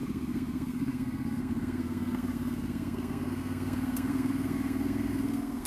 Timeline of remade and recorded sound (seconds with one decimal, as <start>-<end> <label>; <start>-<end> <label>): 0.0-5.7 remade